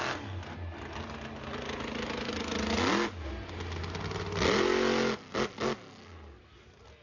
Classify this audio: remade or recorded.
recorded